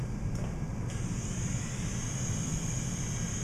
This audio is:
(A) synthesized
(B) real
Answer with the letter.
B